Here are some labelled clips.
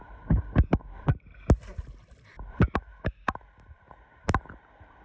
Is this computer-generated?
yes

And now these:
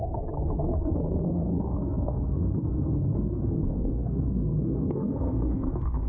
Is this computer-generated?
yes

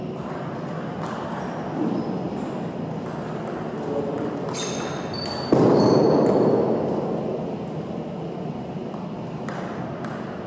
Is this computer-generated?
no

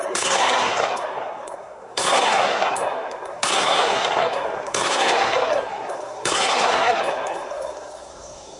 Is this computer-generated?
yes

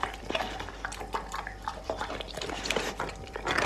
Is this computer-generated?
yes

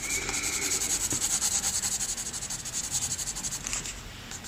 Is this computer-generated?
yes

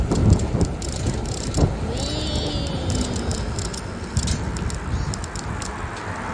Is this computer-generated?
no